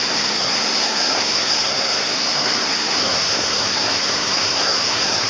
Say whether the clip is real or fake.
fake